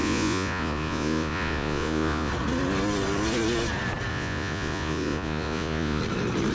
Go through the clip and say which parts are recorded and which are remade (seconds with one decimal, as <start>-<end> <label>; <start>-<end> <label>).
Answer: 0.0-2.3 remade; 2.3-4.1 recorded; 4.1-6.0 remade; 6.0-6.5 recorded